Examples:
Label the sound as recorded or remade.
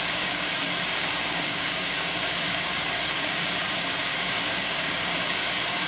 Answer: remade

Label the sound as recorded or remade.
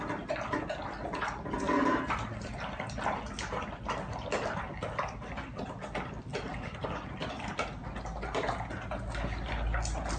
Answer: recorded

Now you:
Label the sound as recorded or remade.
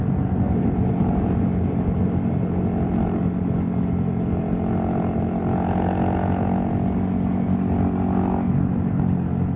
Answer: recorded